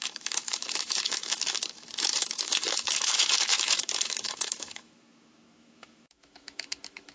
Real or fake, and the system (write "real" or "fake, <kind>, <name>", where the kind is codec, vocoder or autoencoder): fake, autoencoder, DAC-VAE